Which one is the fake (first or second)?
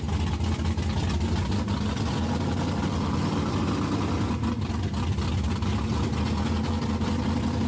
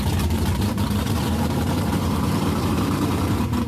second